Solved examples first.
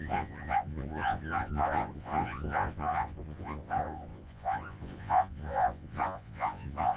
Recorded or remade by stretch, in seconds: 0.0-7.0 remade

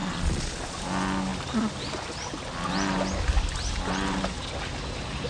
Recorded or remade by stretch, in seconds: 0.0-0.8 remade; 0.8-5.3 recorded

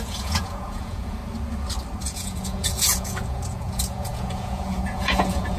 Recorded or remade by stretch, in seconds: 0.0-1.2 remade; 1.2-2.0 recorded; 2.0-5.6 remade

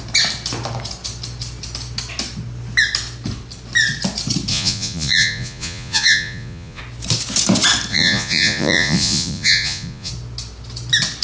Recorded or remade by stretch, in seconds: 0.0-4.5 recorded; 4.5-6.8 remade; 6.8-7.9 recorded; 7.9-10.1 remade; 10.1-11.2 recorded

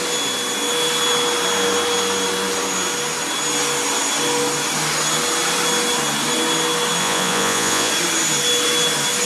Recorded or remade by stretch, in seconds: 0.0-7.0 recorded; 7.0-7.9 remade; 7.9-9.3 recorded

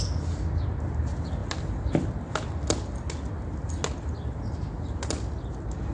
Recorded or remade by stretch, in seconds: 0.0-5.9 recorded

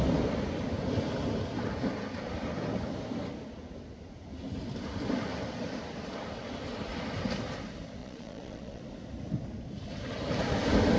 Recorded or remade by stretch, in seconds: 0.0-8.0 recorded; 8.0-8.8 remade; 8.8-11.0 recorded

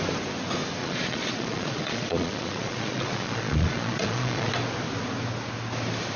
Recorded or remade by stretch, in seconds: 0.0-0.8 recorded; 0.8-4.5 remade; 4.5-6.2 recorded